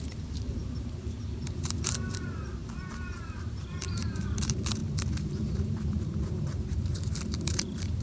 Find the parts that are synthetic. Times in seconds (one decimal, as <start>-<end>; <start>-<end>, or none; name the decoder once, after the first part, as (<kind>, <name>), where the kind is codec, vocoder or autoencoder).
0.0-8.0 (vocoder, BigVGAN v2)